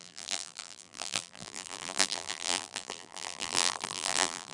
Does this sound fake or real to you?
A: fake